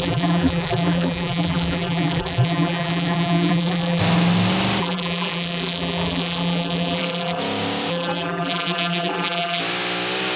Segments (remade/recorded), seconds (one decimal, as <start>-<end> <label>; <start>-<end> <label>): 0.0-4.0 remade; 4.0-4.8 recorded; 4.8-7.4 remade; 7.4-7.9 recorded; 7.9-9.6 remade; 9.6-10.4 recorded